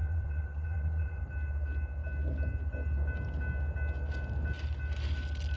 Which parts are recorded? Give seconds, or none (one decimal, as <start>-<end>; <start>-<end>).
1.2-5.6